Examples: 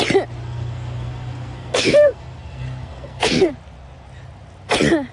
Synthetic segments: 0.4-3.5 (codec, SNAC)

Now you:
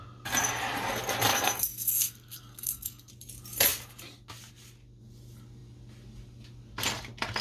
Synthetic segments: 1.3-3.1 (codec, SNAC)

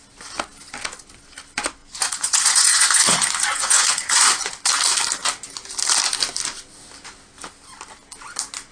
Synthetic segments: 1.8-4.5 (vocoder, Vocos)

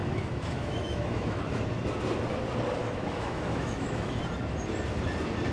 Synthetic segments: 0.0-1.5 (autoencoder, DAC-VAE); 2.8-4.2

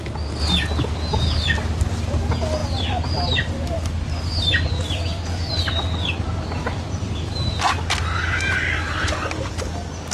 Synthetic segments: 2.6-7.7 (vocoder, BigVGAN v2)

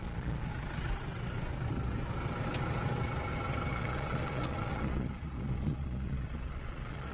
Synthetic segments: 0.0-0.5 (vocoder, Vocos); 3.7-7.1

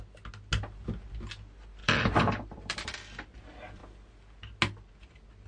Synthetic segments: 1.8-2.9 (vocoder, BigVGAN v2)